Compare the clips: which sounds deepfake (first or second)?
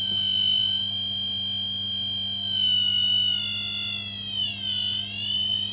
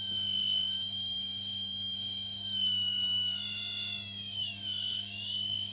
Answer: second